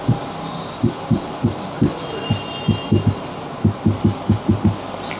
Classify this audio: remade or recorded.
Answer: recorded